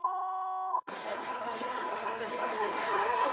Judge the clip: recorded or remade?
remade